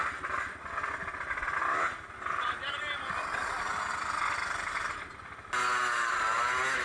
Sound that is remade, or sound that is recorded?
recorded